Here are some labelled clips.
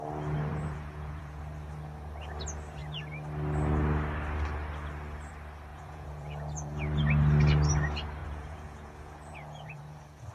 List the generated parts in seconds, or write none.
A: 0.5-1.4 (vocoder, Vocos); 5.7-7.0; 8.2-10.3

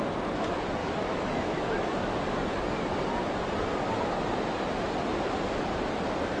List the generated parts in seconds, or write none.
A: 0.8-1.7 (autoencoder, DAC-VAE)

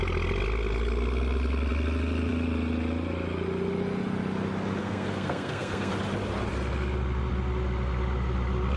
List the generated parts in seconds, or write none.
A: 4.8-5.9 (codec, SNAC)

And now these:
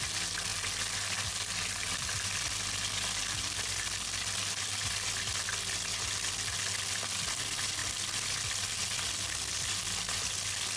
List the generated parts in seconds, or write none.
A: none